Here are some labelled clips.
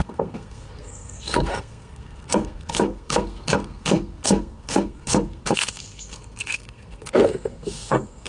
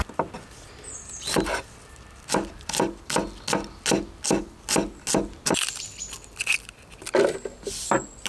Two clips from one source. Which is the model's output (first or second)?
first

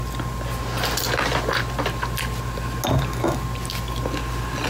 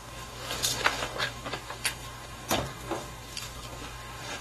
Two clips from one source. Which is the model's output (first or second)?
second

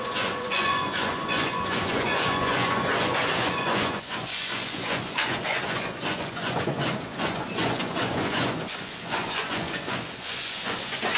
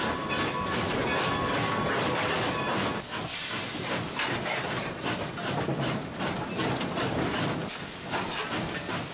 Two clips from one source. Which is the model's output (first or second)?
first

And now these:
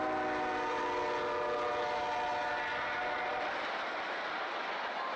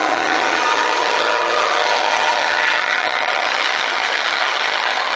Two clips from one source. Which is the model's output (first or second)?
second